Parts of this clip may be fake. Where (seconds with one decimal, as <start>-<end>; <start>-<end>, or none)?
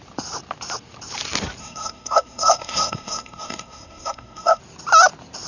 1.6-4.6